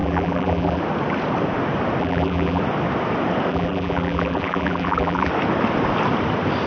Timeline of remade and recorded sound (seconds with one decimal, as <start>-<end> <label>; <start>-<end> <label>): 0.0-0.8 remade; 0.8-2.0 recorded; 2.0-2.6 remade; 2.6-3.5 recorded; 3.5-5.3 remade; 5.3-6.7 recorded